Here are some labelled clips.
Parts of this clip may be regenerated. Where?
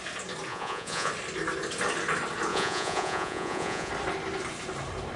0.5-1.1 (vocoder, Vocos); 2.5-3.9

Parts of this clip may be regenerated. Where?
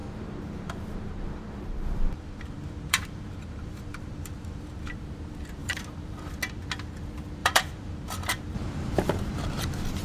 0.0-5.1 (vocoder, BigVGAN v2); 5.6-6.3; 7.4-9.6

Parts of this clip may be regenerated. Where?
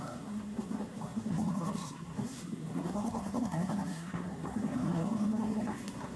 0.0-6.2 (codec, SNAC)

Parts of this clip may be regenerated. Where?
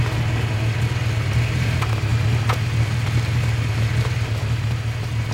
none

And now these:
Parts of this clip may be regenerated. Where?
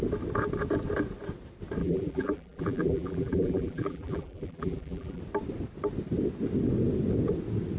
1.8-5.2 (vocoder, BigVGAN v2)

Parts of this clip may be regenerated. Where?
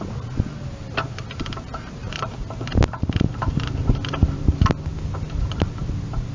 2.0-5.0 (vocoder, BigVGAN v2)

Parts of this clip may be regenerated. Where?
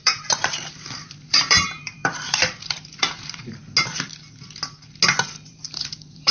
0.0-3.6 (vocoder, BigVGAN v2); 5.5-6.3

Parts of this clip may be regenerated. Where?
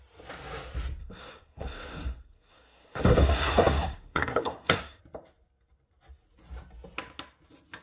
1.0-5.0 (codec, SNAC)